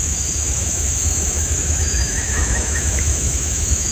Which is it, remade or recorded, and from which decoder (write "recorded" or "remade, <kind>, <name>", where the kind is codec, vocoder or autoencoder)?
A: remade, autoencoder, DAC-VAE